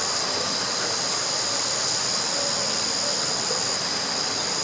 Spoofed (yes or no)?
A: no